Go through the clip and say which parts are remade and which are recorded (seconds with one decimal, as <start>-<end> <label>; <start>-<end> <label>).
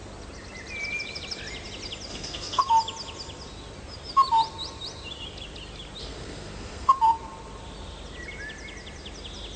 0.0-2.1 recorded; 2.1-2.6 remade; 2.6-6.0 recorded; 6.0-6.9 remade; 6.9-9.6 recorded